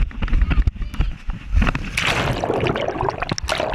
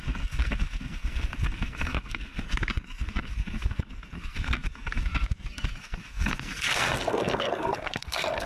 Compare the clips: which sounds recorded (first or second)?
first